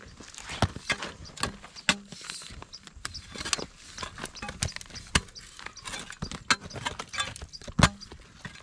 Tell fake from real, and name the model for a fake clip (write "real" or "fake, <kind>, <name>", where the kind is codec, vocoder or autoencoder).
real